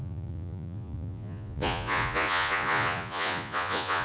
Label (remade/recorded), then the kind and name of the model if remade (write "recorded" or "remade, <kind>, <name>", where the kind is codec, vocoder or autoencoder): remade, vocoder, Vocos